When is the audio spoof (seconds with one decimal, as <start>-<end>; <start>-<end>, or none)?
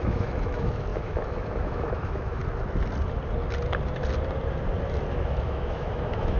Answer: 0.0-2.4; 5.1-6.4